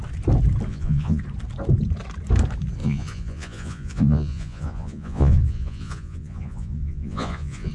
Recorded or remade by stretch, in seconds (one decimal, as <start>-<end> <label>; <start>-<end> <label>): 0.0-0.7 recorded; 0.7-1.2 remade; 1.2-2.8 recorded; 2.8-7.7 remade